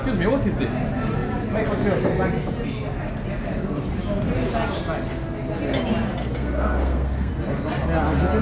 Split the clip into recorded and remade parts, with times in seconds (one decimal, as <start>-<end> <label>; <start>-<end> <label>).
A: 0.0-6.2 recorded; 6.2-7.3 remade; 7.3-8.4 recorded